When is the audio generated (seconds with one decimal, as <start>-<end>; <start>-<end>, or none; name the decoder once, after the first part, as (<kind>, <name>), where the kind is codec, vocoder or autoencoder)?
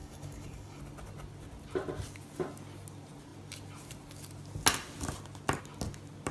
0.0-0.8 (codec, DAC)